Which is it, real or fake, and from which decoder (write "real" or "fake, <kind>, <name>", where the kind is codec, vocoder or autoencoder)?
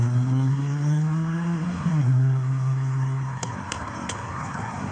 fake, codec, SNAC